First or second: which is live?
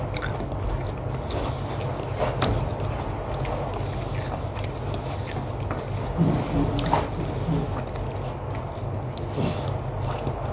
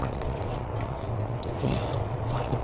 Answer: first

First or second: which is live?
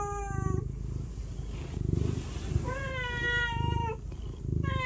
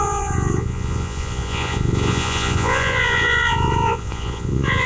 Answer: first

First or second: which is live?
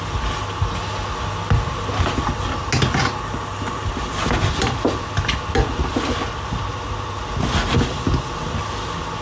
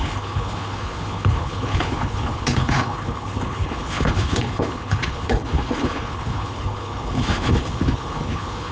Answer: first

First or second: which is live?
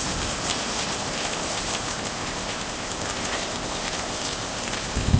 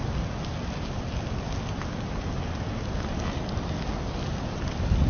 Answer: second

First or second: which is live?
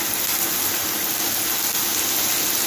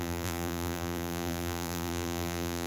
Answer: first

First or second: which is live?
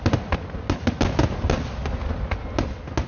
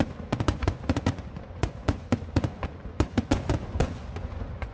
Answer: first